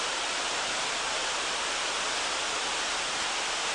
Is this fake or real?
real